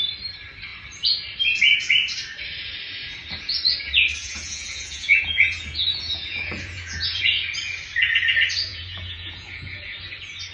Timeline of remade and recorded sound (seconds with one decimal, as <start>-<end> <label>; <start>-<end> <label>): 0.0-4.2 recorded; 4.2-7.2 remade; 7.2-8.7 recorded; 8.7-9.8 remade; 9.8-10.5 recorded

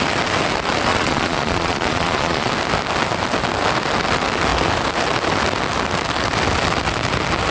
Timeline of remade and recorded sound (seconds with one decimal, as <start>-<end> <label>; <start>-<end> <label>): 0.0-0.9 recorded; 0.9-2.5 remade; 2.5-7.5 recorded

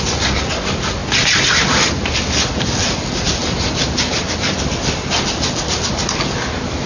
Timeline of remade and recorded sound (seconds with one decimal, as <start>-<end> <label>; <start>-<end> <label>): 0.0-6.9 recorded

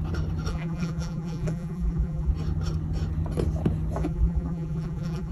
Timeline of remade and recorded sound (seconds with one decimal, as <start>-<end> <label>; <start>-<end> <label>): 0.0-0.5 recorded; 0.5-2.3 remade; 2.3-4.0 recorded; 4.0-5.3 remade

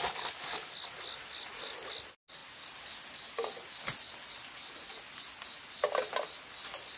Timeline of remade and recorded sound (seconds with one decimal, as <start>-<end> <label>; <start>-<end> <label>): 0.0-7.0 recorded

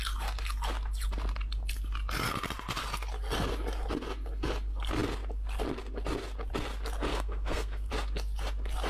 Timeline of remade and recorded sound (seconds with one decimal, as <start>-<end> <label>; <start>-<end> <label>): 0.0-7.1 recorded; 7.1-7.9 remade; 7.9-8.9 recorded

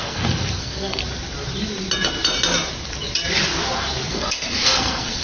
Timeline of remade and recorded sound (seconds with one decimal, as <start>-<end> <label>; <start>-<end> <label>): 0.0-1.0 remade; 1.0-4.1 recorded; 4.1-5.2 remade